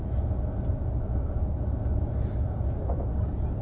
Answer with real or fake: real